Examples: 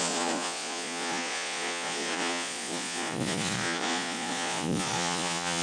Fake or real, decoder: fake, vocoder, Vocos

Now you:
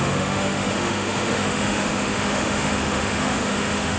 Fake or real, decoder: fake, autoencoder, DAC-VAE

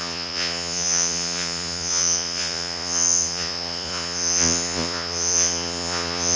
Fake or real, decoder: fake, vocoder, Vocos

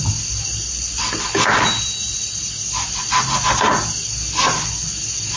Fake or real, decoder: real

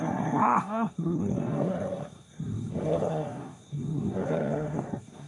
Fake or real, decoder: fake, codec, SNAC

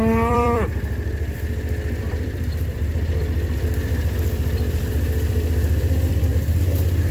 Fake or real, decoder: fake, vocoder, BigVGAN v2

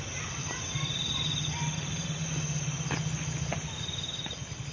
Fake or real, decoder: real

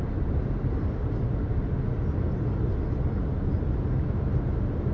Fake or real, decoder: real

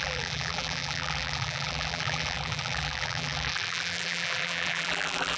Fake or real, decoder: fake, vocoder, BigVGAN v2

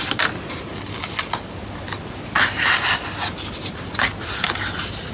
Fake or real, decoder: real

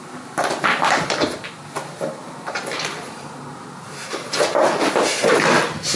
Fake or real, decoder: real